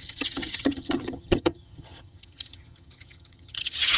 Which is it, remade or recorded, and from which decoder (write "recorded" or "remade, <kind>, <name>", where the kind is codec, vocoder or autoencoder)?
remade, vocoder, HiFi-GAN